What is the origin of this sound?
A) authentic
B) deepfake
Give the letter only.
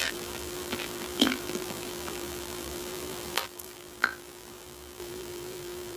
B